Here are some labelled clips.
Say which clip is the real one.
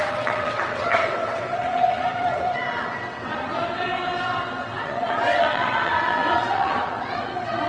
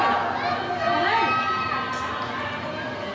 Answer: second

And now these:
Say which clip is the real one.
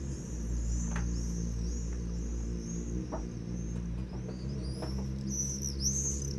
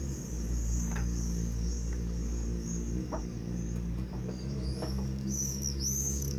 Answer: first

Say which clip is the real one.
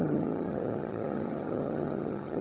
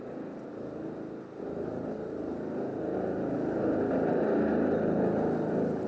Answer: second